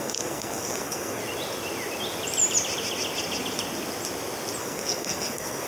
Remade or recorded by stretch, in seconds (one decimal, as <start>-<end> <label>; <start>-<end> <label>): 0.0-1.2 remade; 1.2-4.6 recorded; 4.6-5.7 remade